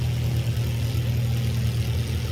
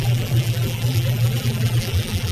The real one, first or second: first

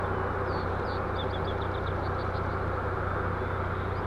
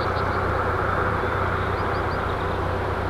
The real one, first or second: first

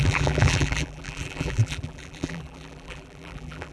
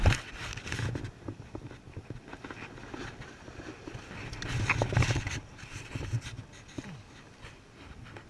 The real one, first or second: second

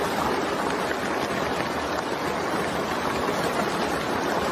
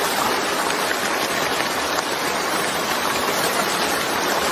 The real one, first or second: first